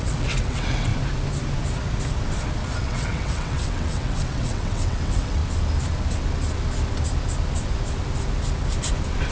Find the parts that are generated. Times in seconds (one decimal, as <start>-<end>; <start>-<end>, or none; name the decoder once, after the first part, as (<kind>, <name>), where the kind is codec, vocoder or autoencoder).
0.0-0.9 (vocoder, WaveNeXt); 2.8-5.4